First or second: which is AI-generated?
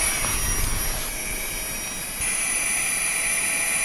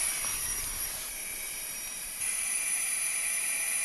second